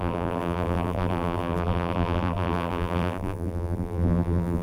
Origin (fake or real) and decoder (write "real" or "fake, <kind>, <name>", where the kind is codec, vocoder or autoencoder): fake, vocoder, BigVGAN v2